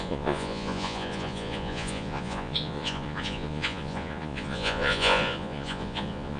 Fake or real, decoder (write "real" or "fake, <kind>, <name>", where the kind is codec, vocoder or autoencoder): fake, vocoder, Vocos